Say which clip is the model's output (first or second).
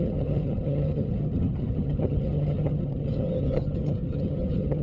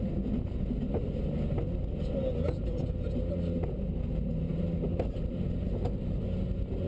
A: first